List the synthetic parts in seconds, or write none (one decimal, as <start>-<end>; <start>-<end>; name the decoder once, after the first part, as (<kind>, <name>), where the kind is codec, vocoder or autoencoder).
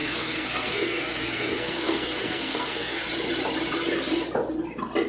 0.0-3.1 (codec, SNAC)